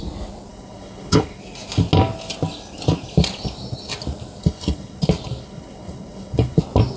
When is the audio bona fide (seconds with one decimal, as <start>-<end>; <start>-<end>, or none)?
0.0-0.5; 1.4-4.4; 5.0-5.4; 6.6-7.0